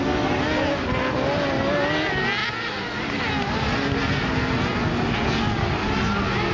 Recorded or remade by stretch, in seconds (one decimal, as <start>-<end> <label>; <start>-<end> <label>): 0.0-6.5 recorded